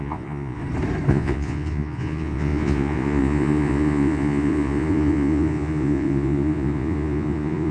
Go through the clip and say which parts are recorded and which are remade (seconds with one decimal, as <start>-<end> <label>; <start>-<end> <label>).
0.0-0.6 remade; 0.6-1.1 recorded; 1.1-7.7 remade